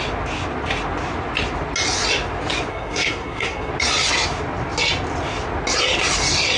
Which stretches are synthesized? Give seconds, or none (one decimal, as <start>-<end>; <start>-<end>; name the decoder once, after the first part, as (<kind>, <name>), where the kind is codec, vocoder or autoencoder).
2.7-3.7 (codec, SNAC)